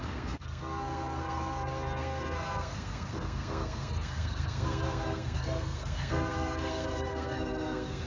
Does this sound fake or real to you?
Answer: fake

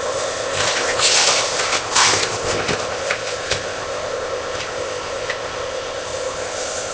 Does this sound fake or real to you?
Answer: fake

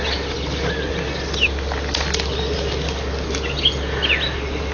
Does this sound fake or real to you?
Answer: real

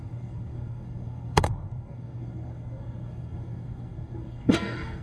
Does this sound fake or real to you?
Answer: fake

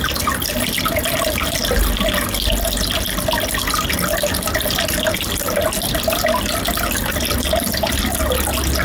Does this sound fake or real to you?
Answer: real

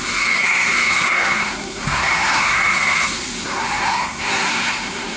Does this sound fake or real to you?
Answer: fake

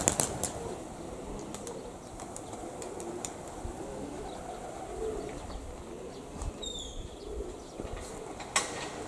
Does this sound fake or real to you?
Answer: fake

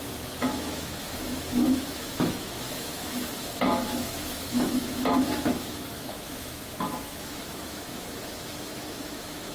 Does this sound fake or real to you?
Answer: fake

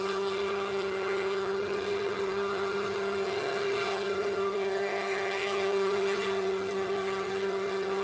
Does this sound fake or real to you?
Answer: fake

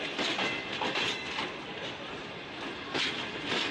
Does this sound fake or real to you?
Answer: real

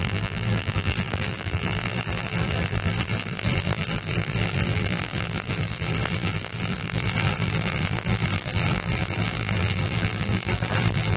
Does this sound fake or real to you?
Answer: fake